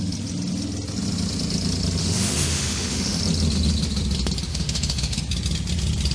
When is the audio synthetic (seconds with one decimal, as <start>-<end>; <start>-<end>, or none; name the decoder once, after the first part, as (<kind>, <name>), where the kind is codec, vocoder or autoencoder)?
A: 2.0-3.2 (autoencoder, DAC-VAE); 4.5-5.2